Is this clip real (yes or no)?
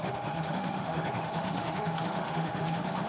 no